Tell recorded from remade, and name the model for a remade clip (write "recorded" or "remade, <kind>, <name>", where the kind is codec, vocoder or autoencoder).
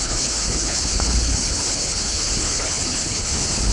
remade, codec, HILCodec